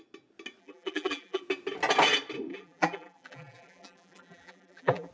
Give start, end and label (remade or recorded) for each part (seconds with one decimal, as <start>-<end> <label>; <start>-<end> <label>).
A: 0.0-0.6 recorded; 0.6-1.4 remade; 1.4-2.5 recorded; 2.5-5.1 remade

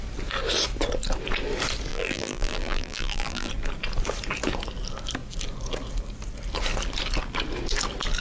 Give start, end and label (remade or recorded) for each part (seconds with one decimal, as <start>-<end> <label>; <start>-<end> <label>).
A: 0.0-1.9 recorded; 1.9-3.5 remade; 3.5-8.2 recorded